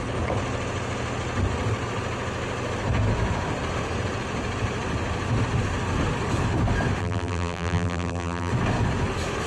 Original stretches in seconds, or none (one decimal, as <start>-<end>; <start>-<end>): 0.0-7.0; 8.5-9.5